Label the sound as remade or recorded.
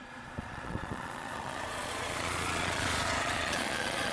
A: remade